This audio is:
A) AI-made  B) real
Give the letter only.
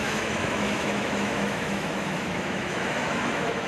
A